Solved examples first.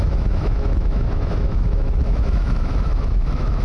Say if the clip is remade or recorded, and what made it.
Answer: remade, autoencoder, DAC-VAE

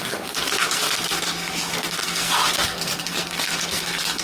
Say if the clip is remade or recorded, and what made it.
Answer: remade, codec, SNAC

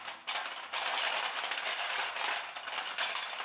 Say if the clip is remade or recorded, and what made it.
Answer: recorded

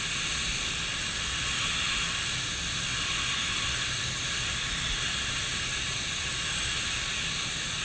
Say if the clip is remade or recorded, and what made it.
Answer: recorded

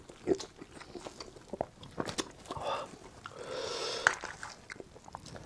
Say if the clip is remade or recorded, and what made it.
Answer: recorded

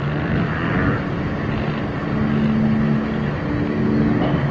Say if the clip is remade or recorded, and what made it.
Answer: recorded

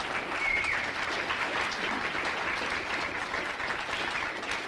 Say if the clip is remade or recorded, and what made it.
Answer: recorded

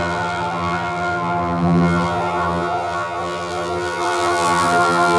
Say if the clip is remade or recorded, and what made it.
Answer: remade, vocoder, BigVGAN v2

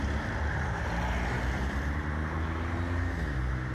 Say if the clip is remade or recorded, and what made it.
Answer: recorded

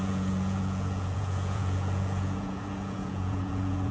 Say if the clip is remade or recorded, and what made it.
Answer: remade, vocoder, Vocos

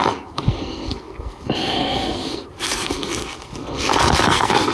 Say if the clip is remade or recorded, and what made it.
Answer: remade, codec, SNAC